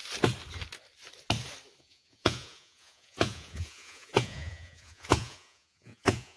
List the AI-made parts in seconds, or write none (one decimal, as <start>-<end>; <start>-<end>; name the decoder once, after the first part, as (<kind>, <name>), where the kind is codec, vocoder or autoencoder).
1.8-6.4 (vocoder, Vocos)